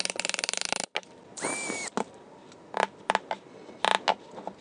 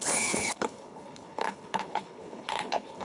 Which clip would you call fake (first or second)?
second